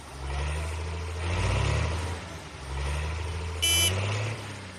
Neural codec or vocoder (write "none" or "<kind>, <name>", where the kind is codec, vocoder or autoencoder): none